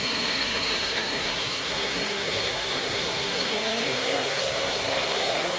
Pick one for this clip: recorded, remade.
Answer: remade